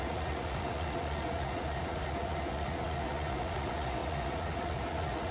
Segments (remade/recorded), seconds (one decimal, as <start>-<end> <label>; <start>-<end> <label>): 0.0-5.3 remade